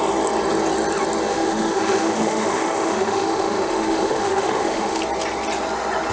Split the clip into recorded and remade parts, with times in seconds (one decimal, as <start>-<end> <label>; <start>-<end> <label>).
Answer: 0.0-1.3 recorded; 1.3-5.0 remade; 5.0-6.1 recorded